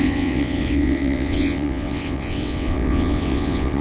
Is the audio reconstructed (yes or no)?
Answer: yes